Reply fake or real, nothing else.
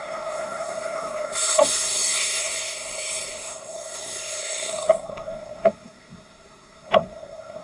fake